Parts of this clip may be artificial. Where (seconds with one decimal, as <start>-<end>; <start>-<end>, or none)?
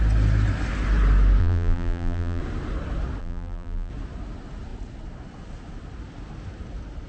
1.4-2.4; 3.2-3.9